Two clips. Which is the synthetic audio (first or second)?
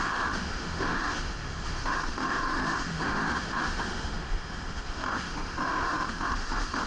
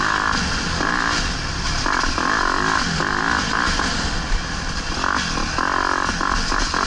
first